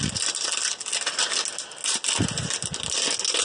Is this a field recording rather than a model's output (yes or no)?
yes